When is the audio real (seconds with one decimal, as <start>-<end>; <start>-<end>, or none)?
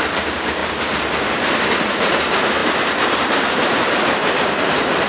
0.6-1.7